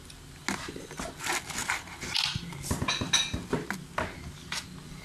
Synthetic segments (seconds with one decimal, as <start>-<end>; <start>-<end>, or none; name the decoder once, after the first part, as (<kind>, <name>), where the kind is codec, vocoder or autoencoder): none